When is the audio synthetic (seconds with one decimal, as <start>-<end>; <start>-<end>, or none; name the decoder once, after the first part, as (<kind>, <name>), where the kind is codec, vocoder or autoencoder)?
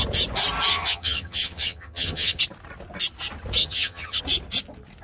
0.7-2.4 (vocoder, HiFi-GAN); 3.6-4.2